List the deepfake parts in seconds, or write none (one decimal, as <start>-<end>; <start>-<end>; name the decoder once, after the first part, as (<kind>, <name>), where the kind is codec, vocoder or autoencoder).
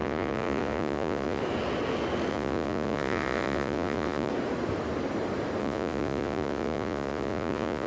0.0-1.4 (vocoder, Vocos); 2.3-4.3; 5.6-7.9